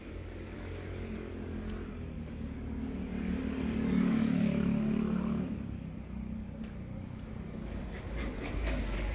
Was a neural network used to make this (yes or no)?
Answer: yes